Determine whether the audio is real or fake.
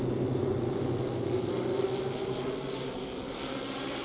real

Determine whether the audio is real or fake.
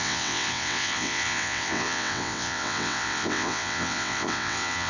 fake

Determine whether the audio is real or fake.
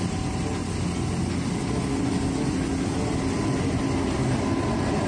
real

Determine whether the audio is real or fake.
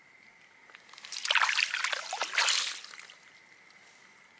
real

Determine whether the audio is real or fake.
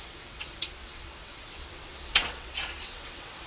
fake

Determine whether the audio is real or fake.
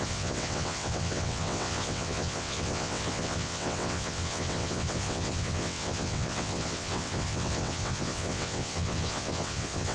fake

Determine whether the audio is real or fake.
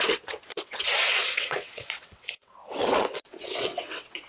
fake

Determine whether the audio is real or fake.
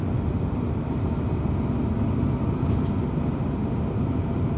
real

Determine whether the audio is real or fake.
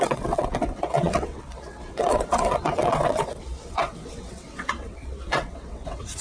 fake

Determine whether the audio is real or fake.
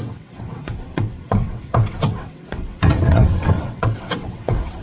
fake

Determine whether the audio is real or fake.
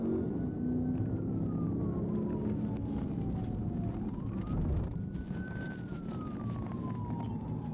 real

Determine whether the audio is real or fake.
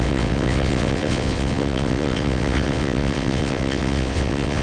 fake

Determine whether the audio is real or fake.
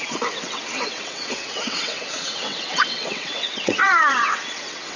fake